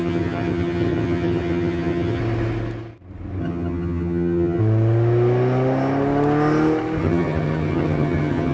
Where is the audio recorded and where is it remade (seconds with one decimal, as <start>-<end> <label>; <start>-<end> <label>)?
0.0-2.2 remade; 2.2-3.4 recorded; 3.4-4.6 remade; 4.6-7.0 recorded; 7.0-8.5 remade